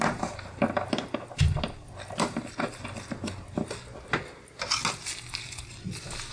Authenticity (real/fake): real